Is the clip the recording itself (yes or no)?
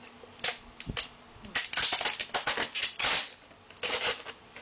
yes